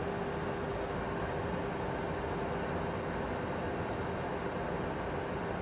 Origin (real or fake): real